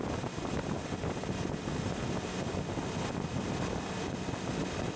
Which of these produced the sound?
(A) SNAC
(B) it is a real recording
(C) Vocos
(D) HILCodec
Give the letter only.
B